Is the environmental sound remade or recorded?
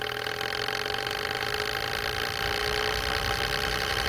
recorded